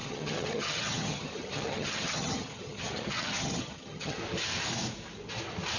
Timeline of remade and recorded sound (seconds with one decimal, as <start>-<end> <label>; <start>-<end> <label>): 0.0-4.2 remade; 4.2-5.8 recorded